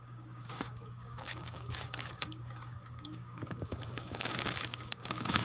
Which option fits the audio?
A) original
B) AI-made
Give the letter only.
B